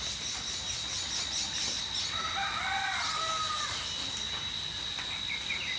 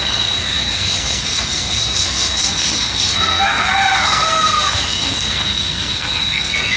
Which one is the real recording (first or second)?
first